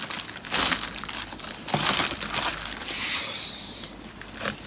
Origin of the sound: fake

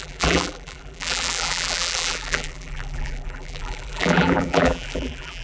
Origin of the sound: fake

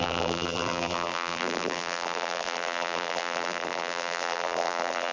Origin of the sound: fake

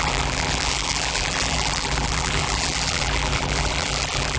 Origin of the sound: fake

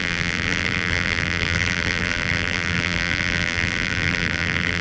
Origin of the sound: fake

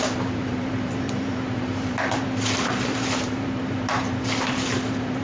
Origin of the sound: fake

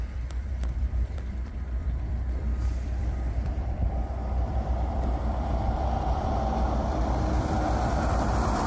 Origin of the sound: fake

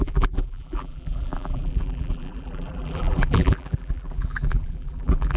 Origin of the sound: fake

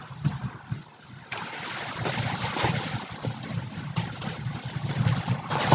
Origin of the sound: real